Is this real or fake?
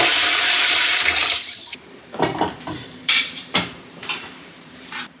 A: fake